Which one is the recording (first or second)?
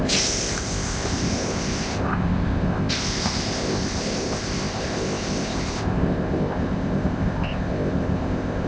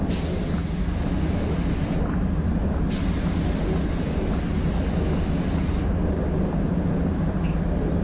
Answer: second